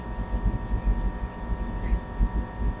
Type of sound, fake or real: real